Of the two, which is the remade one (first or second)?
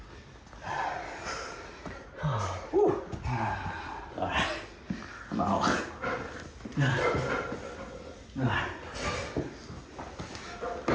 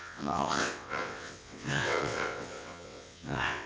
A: second